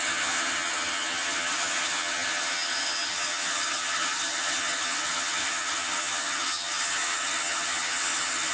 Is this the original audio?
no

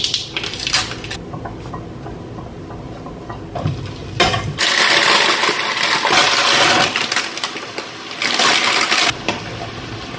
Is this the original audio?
yes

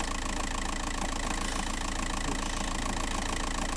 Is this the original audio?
yes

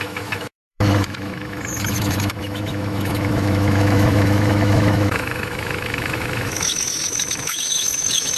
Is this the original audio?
no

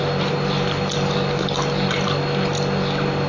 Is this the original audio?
yes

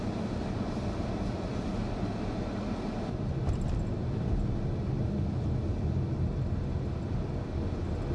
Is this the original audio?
yes